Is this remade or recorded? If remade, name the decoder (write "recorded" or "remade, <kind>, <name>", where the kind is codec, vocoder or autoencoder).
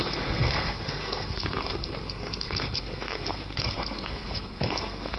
remade, codec, SNAC